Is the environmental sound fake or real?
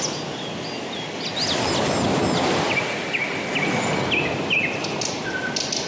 real